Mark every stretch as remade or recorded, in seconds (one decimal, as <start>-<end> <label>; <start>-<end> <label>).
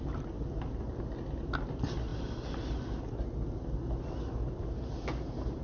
0.0-5.6 recorded